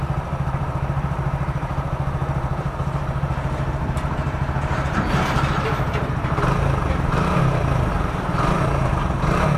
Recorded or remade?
remade